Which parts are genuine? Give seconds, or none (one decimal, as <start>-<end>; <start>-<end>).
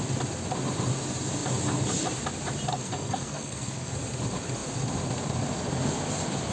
0.0-2.7; 3.9-6.5